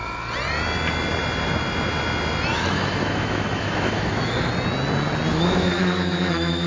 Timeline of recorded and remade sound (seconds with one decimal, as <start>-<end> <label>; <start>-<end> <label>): 0.0-2.5 recorded; 2.5-4.5 remade; 4.5-5.3 recorded; 5.3-6.7 remade